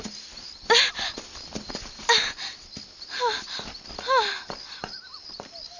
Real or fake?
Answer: real